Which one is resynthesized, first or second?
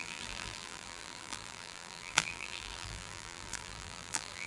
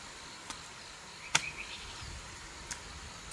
first